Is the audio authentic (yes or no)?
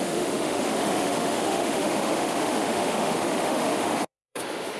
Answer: no